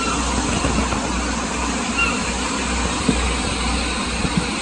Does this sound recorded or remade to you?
recorded